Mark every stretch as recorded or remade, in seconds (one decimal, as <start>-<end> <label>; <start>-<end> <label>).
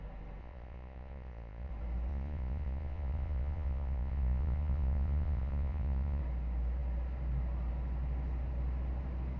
0.0-0.4 recorded; 0.4-1.7 remade; 1.7-2.1 recorded; 2.1-6.2 remade; 6.2-9.4 recorded